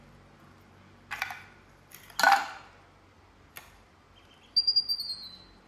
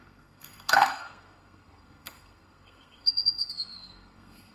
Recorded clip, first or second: first